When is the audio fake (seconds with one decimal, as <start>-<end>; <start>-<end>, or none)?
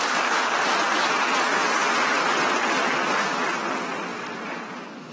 0.8-2.4; 4.1-5.1